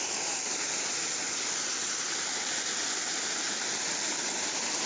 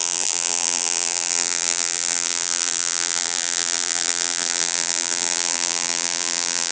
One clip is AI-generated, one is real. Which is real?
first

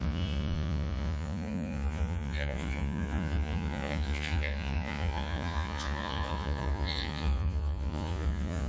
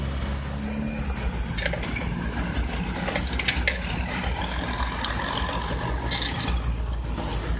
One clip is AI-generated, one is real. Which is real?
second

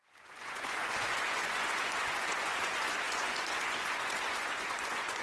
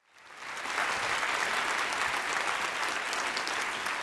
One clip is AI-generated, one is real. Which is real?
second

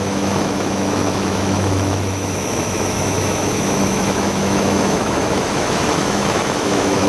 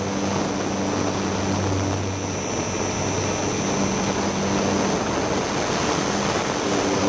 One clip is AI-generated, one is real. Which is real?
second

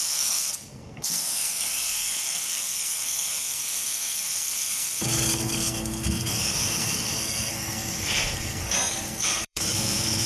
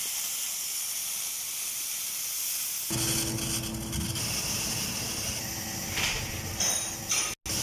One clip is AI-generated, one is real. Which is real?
second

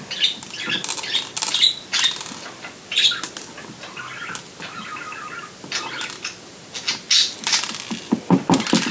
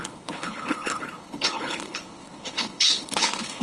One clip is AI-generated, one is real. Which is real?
first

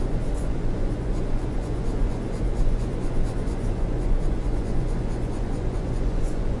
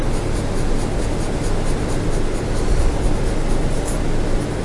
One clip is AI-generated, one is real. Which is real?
second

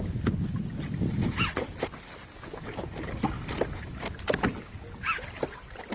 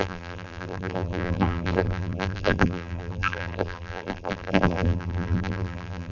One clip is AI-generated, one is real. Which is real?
first